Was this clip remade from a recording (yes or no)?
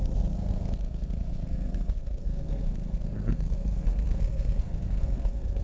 yes